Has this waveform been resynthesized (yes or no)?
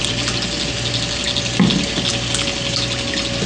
no